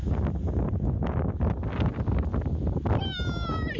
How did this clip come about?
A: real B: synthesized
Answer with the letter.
A